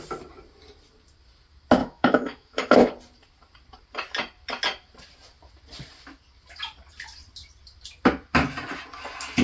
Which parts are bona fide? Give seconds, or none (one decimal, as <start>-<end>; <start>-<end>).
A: 0.0-1.8; 2.9-9.4

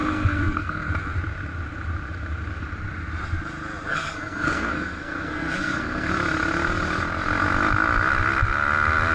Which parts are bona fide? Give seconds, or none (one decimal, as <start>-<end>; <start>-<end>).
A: 0.9-3.9; 6.1-9.1

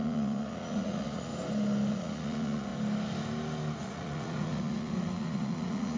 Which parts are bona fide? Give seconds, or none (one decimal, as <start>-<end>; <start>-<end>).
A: 1.3-1.9; 2.7-3.8

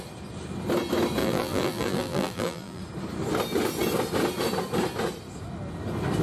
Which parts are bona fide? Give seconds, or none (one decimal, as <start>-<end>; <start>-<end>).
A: 0.0-1.2; 2.8-6.2

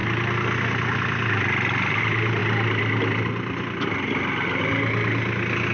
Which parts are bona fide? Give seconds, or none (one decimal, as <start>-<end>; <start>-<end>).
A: 0.0-5.7

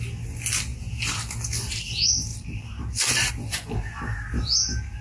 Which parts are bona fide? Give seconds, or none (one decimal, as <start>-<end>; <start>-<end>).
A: 0.0-2.3; 3.3-5.0

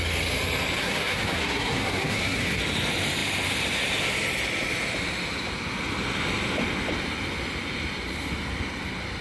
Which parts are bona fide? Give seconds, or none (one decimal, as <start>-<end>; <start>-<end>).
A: 0.0-0.8; 2.6-9.2